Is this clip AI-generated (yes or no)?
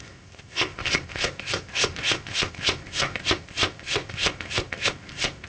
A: yes